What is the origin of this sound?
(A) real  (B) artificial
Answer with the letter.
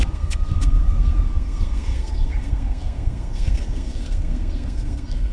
B